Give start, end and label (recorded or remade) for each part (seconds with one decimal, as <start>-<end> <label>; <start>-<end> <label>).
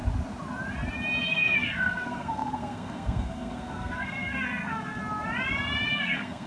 0.0-1.2 recorded; 1.2-5.0 remade; 5.0-5.9 recorded; 5.9-6.5 remade